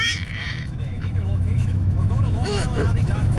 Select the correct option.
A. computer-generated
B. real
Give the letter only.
A